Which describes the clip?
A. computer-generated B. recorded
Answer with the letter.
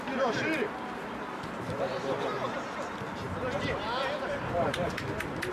B